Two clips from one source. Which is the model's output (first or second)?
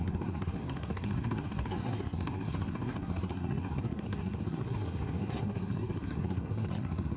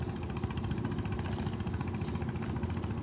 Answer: first